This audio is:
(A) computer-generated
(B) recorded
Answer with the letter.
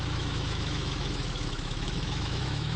A